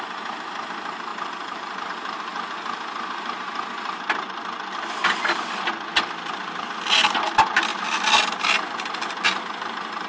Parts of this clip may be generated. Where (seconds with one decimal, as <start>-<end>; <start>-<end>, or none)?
none